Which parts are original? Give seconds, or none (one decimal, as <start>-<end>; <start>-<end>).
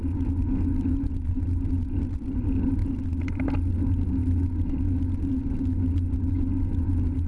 0.0-7.3